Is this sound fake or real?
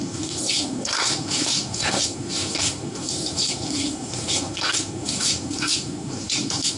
fake